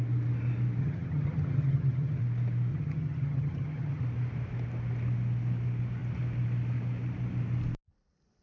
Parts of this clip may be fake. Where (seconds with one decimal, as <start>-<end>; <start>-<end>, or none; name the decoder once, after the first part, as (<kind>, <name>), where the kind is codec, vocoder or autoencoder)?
0.8-2.2 (vocoder, HiFi-GAN); 2.7-4.0